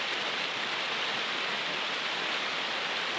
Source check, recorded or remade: recorded